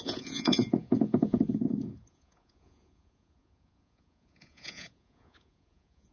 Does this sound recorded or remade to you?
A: remade